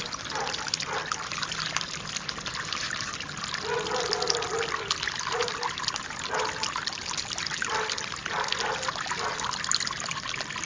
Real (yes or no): yes